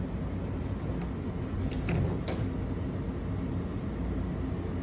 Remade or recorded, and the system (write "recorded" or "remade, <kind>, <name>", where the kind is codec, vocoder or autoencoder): recorded